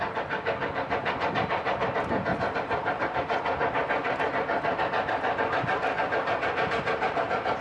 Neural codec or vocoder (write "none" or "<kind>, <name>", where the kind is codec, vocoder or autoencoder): none